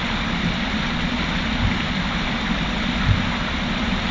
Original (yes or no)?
yes